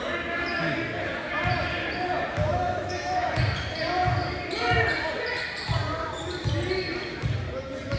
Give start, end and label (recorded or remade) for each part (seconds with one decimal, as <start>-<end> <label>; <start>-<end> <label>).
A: 0.0-2.4 recorded; 2.4-3.4 remade; 3.4-8.0 recorded